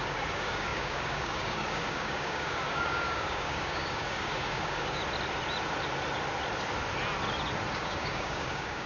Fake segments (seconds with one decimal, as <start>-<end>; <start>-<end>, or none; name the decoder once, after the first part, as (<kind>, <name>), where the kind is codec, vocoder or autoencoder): 0.0-5.0 (codec, DAC); 7.7-8.9